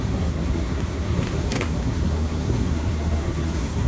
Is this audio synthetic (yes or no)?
yes